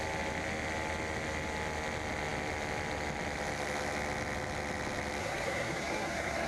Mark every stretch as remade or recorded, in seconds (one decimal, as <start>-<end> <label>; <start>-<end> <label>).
0.0-5.2 recorded; 5.2-6.5 remade

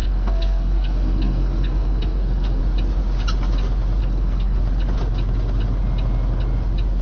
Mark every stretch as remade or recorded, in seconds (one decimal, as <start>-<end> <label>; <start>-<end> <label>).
0.0-2.6 remade; 2.6-4.0 recorded; 4.0-4.6 remade; 4.6-7.0 recorded

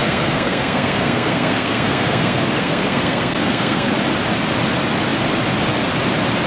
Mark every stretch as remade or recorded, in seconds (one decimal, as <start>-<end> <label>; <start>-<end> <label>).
0.0-3.9 remade; 3.9-6.5 recorded

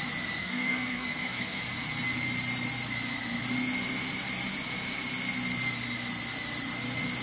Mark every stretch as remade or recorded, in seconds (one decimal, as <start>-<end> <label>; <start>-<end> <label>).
0.0-0.4 recorded; 0.4-1.6 remade; 1.6-7.2 recorded